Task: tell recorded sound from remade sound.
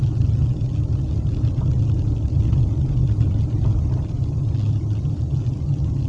recorded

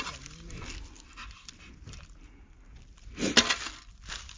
recorded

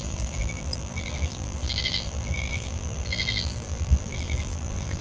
remade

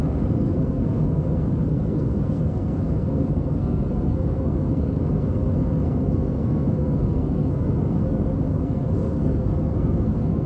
remade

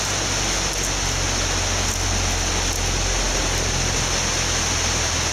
recorded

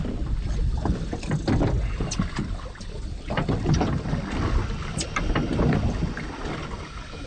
recorded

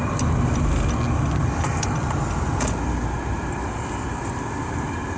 recorded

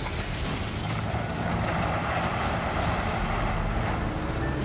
recorded